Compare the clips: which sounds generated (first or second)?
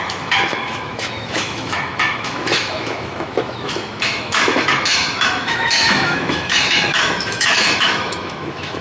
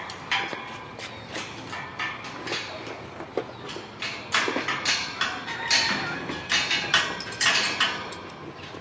first